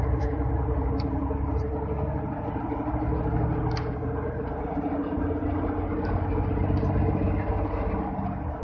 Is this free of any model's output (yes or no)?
yes